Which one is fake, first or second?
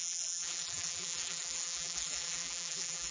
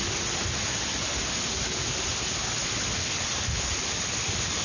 first